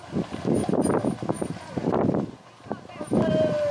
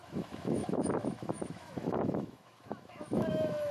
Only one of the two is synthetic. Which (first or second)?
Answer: second